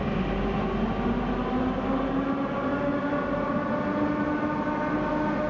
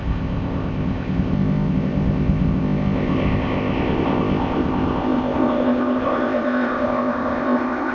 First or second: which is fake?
second